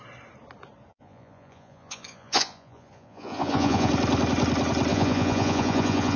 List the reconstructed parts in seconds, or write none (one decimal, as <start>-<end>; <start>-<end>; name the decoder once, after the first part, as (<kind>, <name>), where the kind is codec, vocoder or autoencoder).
0.9-3.9 (vocoder, Vocos); 4.9-6.2